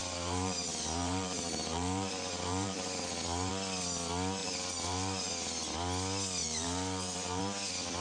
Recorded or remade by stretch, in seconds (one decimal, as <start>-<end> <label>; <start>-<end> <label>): 0.0-3.5 remade; 3.5-4.4 recorded; 4.4-5.3 remade; 5.3-6.4 recorded; 6.4-7.4 remade; 7.4-8.0 recorded